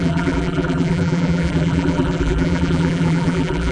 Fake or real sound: fake